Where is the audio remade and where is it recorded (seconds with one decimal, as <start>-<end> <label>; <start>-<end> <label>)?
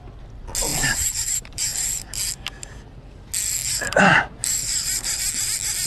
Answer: 0.0-0.7 recorded; 0.7-2.2 remade; 2.2-3.6 recorded; 3.6-5.3 remade; 5.3-5.9 recorded